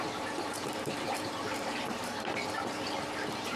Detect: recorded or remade remade